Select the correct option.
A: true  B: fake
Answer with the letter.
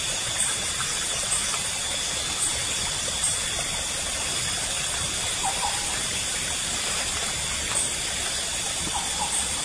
A